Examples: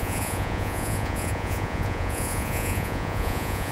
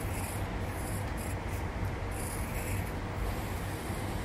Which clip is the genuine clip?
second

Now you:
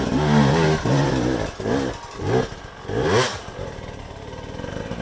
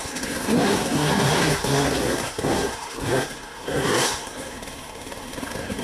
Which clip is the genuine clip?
first